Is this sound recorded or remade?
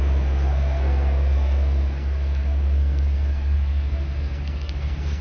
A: remade